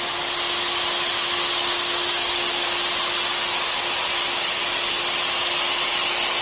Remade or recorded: recorded